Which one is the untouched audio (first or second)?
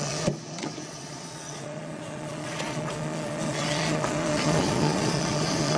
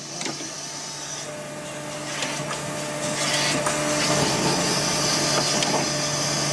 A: second